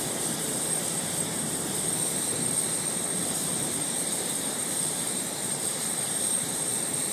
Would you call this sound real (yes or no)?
no